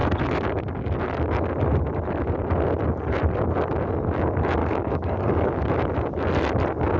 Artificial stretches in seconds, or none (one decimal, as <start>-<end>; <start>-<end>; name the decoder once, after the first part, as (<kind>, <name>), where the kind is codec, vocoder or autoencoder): 4.6-5.7 (codec, DAC)